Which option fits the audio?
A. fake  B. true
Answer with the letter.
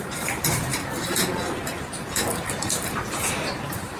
A